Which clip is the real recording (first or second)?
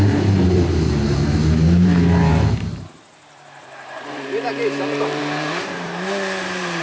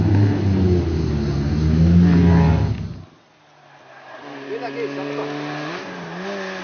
second